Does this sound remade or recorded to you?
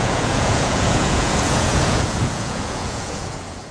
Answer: remade